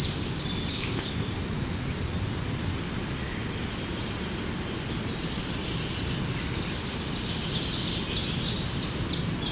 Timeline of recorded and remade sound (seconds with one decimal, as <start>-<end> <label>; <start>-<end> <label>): 0.0-0.7 recorded; 0.7-1.3 remade; 1.3-9.5 recorded